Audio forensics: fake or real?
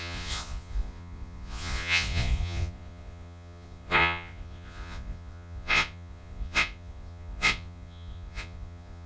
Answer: fake